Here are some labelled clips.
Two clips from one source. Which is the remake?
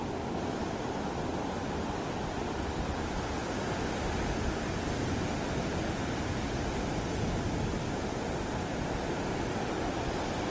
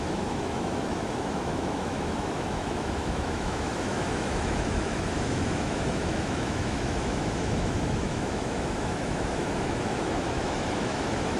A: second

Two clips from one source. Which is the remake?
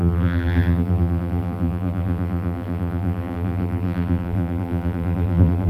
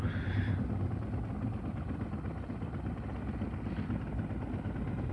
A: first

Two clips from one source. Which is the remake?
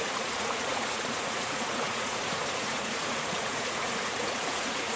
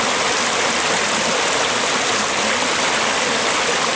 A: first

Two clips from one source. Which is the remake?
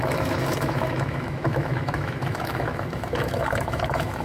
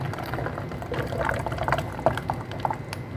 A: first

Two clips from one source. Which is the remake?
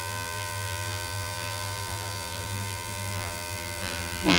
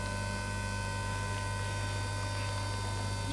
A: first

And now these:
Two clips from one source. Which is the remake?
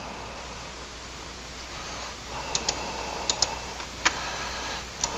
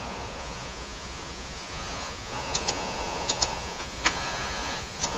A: second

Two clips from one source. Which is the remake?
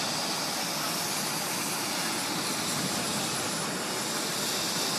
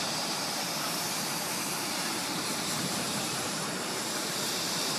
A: second